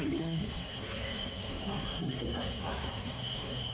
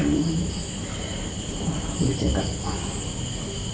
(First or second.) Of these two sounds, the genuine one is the second